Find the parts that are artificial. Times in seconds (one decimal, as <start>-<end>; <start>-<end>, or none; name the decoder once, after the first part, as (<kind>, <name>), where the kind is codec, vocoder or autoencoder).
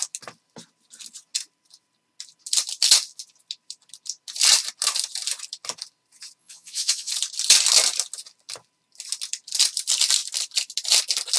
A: 6.4-7.1 (vocoder, Vocos)